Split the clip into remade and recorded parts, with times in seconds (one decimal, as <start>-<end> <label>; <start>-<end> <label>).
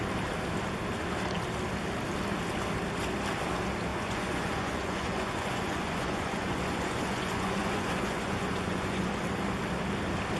0.0-3.9 recorded; 3.9-9.1 remade; 9.1-10.4 recorded